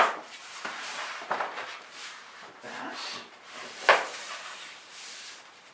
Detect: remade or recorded remade